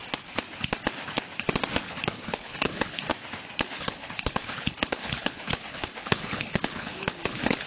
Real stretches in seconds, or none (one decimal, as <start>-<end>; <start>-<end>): 0.0-1.8; 3.1-3.8